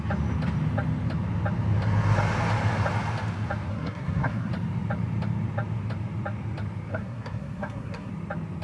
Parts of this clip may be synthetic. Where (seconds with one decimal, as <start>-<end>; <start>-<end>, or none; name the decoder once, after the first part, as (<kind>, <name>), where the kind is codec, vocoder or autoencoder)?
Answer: 3.7-4.5 (codec, SNAC); 6.9-8.1